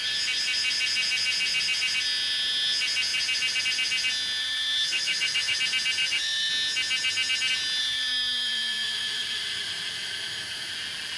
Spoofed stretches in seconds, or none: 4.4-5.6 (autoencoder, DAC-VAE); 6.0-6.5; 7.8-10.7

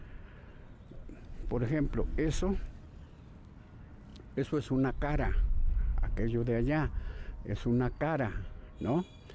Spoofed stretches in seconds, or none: none

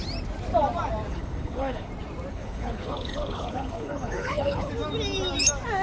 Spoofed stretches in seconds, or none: 1.1-1.9 (codec, HILCodec); 2.3-4.7

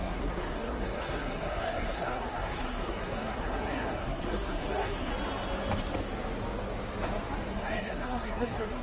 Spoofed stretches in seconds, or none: 0.0-5.1 (codec, SNAC); 7.5-8.8